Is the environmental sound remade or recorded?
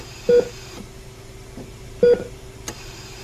recorded